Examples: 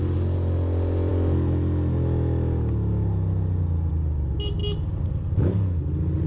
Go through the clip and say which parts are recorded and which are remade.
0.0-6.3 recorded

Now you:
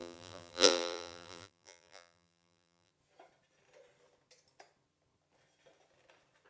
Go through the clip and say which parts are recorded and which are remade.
0.0-2.9 remade; 2.9-6.5 recorded

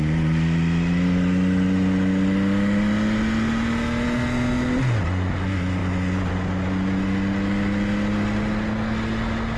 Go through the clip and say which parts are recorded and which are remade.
0.0-9.6 recorded

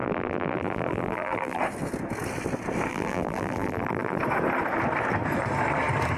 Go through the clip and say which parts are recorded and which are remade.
0.0-1.6 remade; 1.6-2.9 recorded; 2.9-4.2 remade; 4.2-6.2 recorded